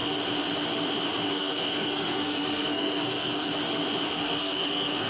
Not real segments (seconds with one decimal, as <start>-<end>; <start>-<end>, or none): 1.3-3.5; 4.1-5.1